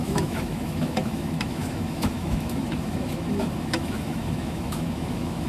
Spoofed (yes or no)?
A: yes